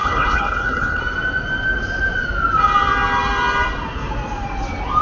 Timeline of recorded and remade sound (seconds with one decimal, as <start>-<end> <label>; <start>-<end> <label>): 0.0-1.0 remade; 1.0-5.0 recorded